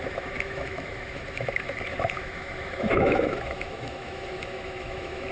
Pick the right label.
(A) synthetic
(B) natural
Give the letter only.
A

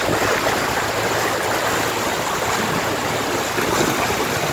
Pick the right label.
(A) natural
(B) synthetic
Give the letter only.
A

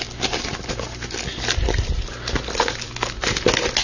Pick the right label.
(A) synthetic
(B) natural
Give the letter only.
B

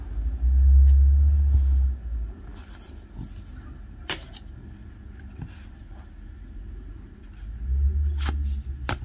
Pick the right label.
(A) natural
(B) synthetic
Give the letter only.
A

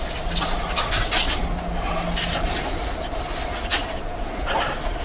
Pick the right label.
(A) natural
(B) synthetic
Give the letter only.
A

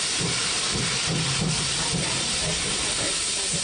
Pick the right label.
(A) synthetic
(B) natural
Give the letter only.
B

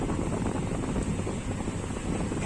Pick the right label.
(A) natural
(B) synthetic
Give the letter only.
A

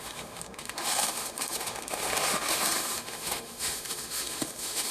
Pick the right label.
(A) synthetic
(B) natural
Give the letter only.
A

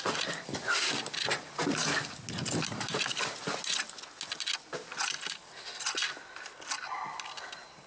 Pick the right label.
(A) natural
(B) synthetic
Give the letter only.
A